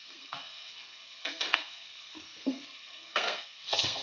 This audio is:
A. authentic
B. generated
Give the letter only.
B